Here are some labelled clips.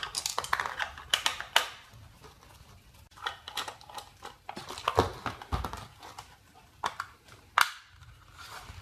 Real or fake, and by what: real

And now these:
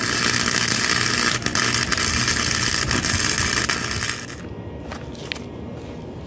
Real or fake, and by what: real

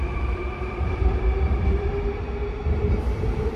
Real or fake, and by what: fake, vocoder, BigVGAN v2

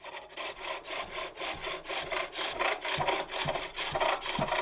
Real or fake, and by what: real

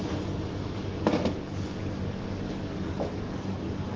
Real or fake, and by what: fake, codec, DAC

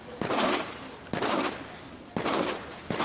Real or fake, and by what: real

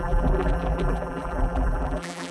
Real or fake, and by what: fake, vocoder, BigVGAN v2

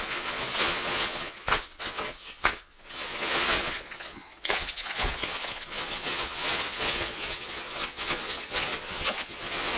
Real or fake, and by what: fake, vocoder, Vocos